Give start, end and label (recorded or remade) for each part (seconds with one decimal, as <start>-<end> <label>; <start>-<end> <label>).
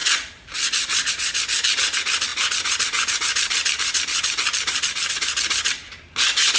0.0-1.1 remade; 1.1-6.6 recorded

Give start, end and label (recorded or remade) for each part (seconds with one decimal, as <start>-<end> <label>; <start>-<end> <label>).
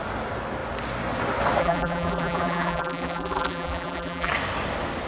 0.0-1.6 recorded; 1.6-4.3 remade; 4.3-5.1 recorded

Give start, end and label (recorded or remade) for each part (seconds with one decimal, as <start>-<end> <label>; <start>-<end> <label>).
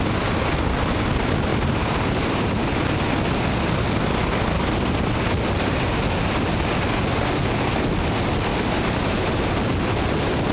0.0-1.5 recorded; 1.5-2.7 remade; 2.7-8.5 recorded; 8.5-9.2 remade; 9.2-10.5 recorded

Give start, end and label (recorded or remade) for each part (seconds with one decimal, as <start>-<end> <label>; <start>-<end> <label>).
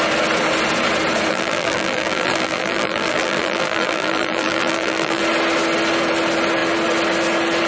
0.0-1.3 recorded; 1.3-5.2 remade; 5.2-7.7 recorded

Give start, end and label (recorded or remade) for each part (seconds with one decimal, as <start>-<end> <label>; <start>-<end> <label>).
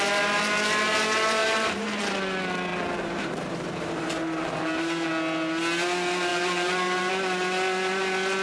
0.0-1.4 recorded; 1.4-2.0 remade; 2.0-2.7 recorded; 2.7-5.1 remade; 5.1-6.3 recorded; 6.3-7.1 remade; 7.1-8.4 recorded